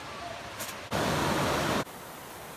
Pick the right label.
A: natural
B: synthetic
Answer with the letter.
A